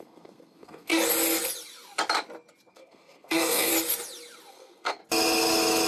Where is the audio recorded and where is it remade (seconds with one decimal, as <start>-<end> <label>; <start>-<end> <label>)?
0.0-0.9 remade; 0.9-2.7 recorded; 2.7-3.7 remade; 3.7-4.5 recorded; 4.5-5.0 remade; 5.0-5.9 recorded